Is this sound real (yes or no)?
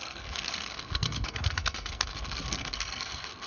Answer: no